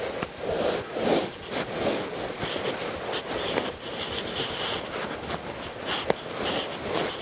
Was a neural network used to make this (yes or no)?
no